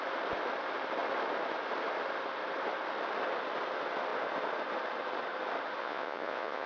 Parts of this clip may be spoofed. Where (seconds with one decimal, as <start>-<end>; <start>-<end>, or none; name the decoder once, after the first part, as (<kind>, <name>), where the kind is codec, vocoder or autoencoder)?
5.8-6.7 (vocoder, Vocos)